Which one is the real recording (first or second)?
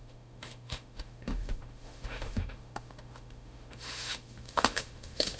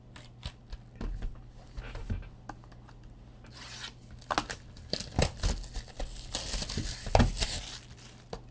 second